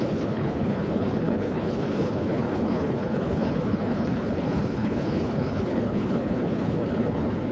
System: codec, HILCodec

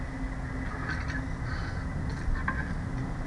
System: none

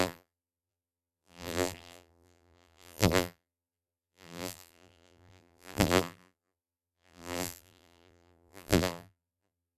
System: vocoder, BigVGAN v2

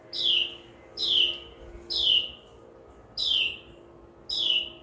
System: none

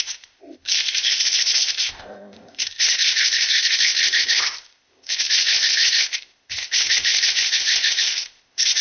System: codec, ZipCodec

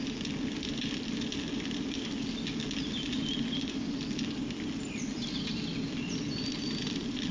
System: none